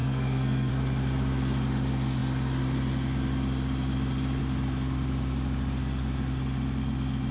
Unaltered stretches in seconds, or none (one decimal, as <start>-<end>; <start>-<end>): 0.7-7.3